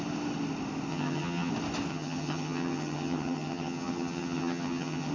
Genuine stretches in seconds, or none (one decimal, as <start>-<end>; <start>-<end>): 0.0-0.9; 1.5-1.9